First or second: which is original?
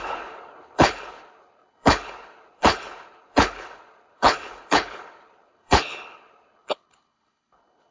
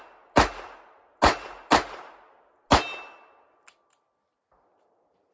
second